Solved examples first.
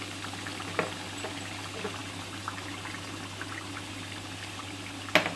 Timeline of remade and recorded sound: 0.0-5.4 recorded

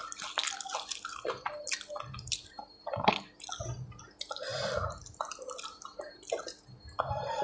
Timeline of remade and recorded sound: 0.0-7.4 recorded

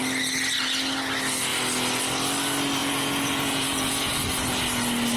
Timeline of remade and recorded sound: 0.0-2.8 recorded; 2.8-4.1 remade; 4.1-5.2 recorded

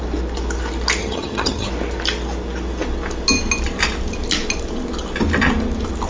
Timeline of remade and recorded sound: 0.0-1.0 recorded; 1.0-1.7 remade; 1.7-6.1 recorded

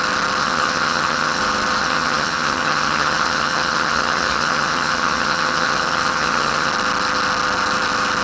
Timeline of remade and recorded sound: 0.0-0.4 recorded; 0.4-1.4 remade; 1.4-1.8 recorded; 1.8-6.7 remade; 6.7-8.2 recorded